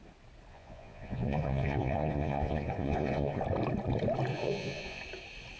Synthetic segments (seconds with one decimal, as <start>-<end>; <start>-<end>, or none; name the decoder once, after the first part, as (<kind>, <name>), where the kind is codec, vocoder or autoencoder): 0.5-3.4 (vocoder, Vocos); 4.3-5.0